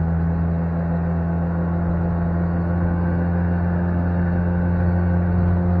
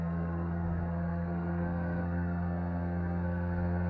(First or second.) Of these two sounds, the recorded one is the first